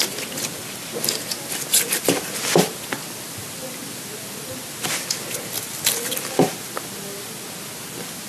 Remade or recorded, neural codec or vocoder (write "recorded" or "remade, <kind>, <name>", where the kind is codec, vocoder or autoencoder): recorded